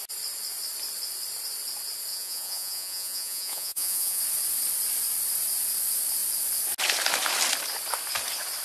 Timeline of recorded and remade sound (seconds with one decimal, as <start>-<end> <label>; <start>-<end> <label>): 0.0-2.1 recorded; 2.1-4.2 remade; 4.2-8.6 recorded